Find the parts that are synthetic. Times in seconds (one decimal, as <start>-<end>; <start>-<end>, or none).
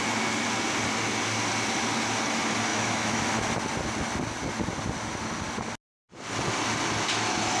2.7-3.3